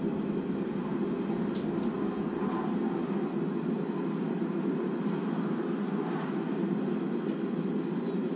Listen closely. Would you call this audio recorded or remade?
recorded